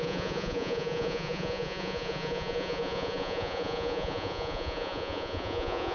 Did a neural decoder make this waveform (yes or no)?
yes